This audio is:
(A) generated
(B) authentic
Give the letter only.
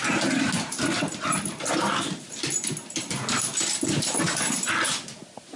B